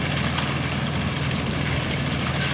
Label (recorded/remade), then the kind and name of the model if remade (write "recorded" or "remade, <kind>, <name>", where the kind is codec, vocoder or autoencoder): recorded